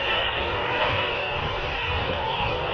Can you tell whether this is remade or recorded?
remade